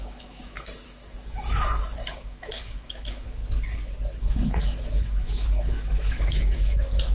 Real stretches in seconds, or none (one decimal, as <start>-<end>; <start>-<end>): 3.4-4.2